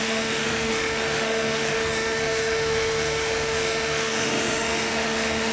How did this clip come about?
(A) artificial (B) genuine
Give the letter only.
A